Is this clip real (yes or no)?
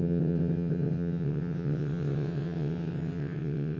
no